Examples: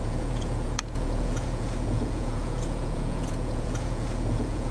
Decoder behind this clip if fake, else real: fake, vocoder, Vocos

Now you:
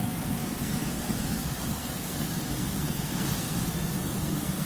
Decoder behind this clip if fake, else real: fake, codec, SNAC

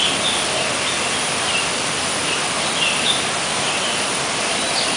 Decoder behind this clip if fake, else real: real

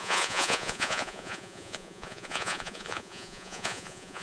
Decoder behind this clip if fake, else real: fake, vocoder, Vocos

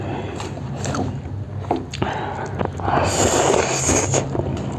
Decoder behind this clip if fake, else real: real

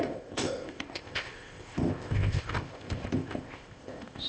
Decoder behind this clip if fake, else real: fake, codec, ZipCodec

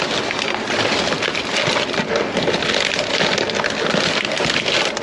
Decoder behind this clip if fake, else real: real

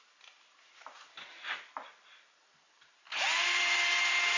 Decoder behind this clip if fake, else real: real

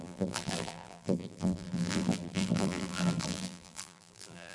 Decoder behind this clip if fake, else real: fake, vocoder, BigVGAN v2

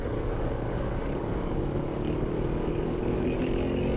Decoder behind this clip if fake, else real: fake, codec, DAC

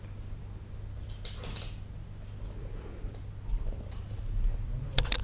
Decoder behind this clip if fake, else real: real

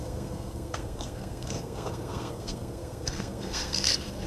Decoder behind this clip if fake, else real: fake, codec, SNAC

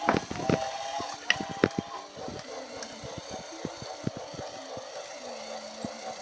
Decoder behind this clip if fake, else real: real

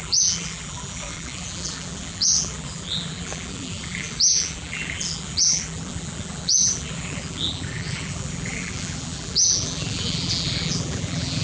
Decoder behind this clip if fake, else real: fake, vocoder, BigVGAN v2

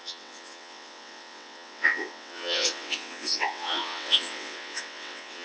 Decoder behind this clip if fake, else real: fake, vocoder, WaveNeXt